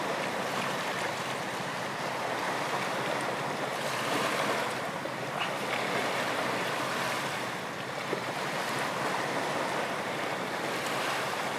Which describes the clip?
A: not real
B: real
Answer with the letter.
B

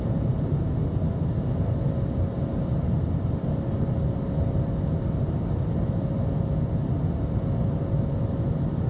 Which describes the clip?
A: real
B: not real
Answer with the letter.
A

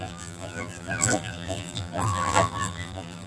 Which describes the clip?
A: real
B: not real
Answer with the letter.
B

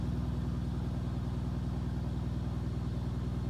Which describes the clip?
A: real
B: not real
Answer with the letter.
A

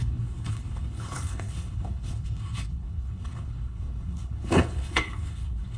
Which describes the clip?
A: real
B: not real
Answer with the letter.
B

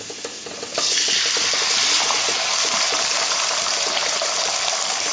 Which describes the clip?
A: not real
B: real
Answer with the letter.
B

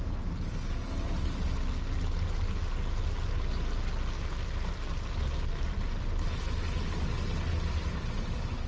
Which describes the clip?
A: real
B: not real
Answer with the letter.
A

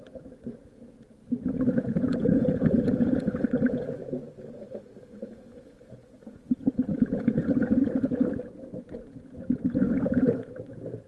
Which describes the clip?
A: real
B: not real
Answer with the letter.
B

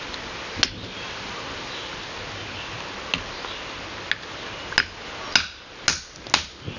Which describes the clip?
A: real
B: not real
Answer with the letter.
A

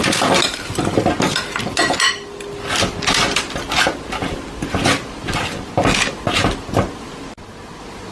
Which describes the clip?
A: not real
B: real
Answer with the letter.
B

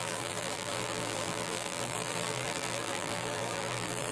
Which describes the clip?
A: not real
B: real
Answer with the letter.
A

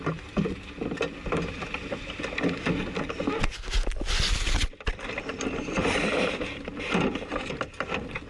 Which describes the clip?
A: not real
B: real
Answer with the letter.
B